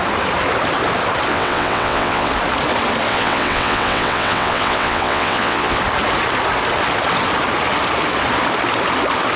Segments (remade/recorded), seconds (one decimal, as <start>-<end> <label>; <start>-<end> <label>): 0.0-1.3 recorded; 1.3-2.3 remade; 2.3-3.1 recorded; 3.1-5.8 remade; 5.8-9.4 recorded